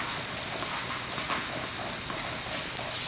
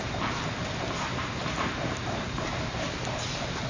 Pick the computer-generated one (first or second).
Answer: second